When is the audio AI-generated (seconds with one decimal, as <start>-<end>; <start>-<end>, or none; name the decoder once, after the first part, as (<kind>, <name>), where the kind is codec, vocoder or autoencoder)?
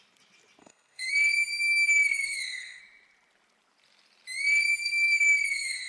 0.6-1.1 (codec, SNAC); 2.0-2.8; 4.8-5.9